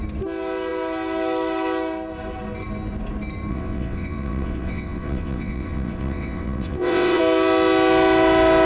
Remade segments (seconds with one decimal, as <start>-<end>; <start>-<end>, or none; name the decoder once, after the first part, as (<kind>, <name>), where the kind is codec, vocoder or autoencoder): 3.5-7.2 (vocoder, WaveNeXt)